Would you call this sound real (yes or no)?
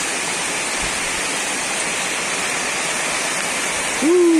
yes